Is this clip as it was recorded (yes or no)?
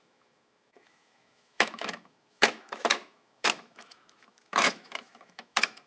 no